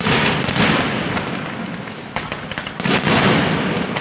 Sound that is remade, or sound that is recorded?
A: recorded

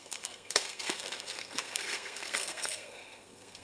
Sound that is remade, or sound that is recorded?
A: remade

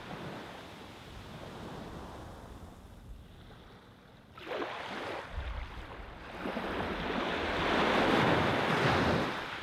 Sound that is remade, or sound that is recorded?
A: recorded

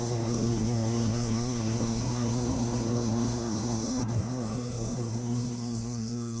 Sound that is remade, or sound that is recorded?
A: remade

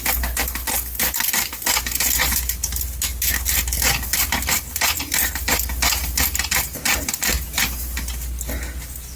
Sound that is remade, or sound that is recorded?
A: recorded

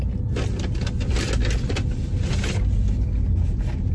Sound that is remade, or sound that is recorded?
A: recorded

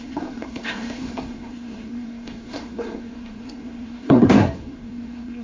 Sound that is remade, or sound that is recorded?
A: remade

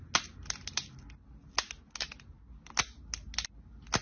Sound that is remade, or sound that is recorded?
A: recorded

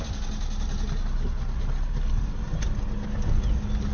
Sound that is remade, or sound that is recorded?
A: recorded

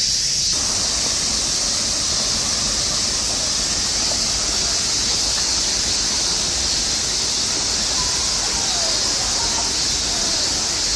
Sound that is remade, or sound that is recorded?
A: recorded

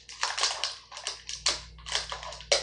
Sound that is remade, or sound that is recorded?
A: recorded